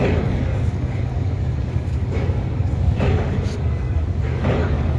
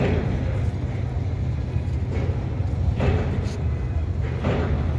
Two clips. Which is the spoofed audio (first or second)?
first